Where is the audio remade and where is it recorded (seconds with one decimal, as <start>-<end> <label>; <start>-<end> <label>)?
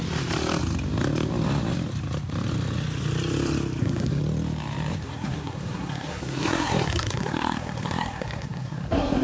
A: 0.0-3.8 recorded; 3.8-4.2 remade; 4.2-5.0 recorded; 5.0-9.2 remade